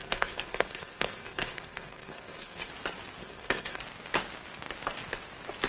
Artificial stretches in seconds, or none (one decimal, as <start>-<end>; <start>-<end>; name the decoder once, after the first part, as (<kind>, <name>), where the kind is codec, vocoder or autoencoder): 0.0-2.7 (codec, SNAC); 3.2-3.8